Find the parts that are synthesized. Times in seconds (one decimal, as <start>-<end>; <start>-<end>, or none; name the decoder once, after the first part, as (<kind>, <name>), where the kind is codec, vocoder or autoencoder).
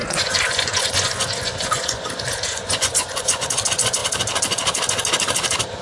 0.0-3.5 (vocoder, Vocos)